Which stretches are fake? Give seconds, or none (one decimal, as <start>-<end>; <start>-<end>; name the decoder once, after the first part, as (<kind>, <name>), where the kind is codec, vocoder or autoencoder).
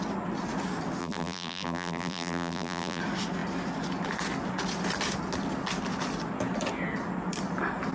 1.0-3.0 (vocoder, BigVGAN v2)